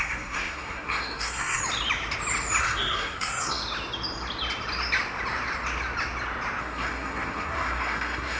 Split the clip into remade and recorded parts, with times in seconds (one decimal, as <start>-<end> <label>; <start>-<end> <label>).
0.0-1.6 remade; 1.6-2.6 recorded; 2.6-3.6 remade; 3.6-6.6 recorded; 6.6-8.4 remade